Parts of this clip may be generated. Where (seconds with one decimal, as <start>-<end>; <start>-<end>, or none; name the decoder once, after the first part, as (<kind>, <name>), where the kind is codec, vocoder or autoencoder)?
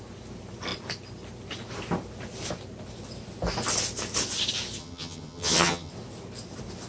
4.8-5.9 (vocoder, HiFi-GAN)